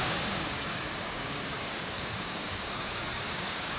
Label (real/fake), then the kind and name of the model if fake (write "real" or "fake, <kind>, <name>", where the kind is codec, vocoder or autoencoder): fake, codec, DAC